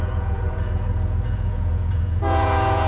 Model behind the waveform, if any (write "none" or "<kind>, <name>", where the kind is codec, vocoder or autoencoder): vocoder, Vocos